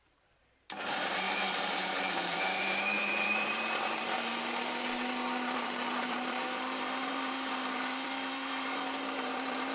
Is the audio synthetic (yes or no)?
yes